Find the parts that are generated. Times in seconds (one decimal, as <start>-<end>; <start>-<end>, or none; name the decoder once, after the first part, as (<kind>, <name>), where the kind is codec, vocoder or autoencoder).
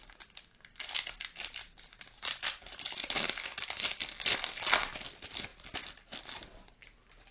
0.0-5.5 (vocoder, BigVGAN v2); 6.2-7.3